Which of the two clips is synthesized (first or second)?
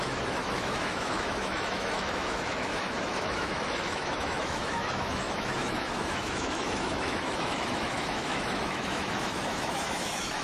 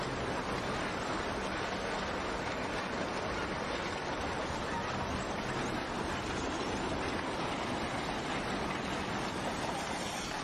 first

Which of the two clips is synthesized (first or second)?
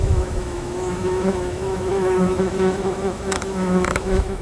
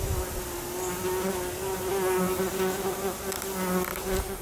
first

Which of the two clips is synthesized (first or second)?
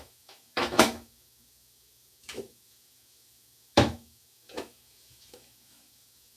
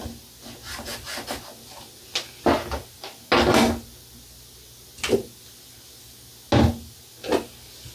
first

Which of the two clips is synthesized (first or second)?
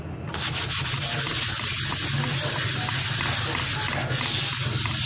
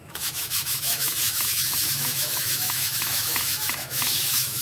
second